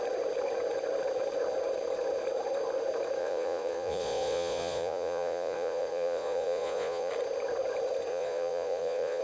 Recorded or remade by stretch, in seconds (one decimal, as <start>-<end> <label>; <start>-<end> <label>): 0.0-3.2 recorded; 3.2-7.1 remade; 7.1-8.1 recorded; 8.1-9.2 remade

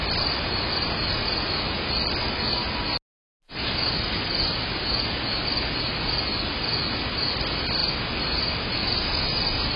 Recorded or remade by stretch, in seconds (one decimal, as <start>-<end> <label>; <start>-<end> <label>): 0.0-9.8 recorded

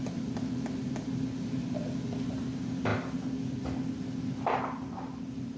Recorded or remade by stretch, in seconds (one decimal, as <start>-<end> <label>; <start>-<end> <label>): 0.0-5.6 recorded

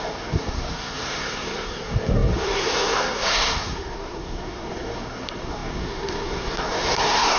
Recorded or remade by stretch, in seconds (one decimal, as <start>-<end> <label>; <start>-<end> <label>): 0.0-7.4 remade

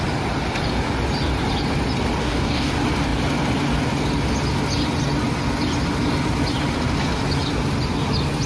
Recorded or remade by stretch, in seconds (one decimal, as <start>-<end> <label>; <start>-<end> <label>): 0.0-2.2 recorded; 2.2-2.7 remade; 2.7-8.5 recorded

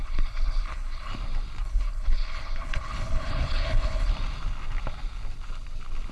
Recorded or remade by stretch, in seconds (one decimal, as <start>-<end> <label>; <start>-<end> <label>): 0.0-1.1 remade; 1.1-1.6 recorded; 1.6-4.1 remade; 4.1-6.1 recorded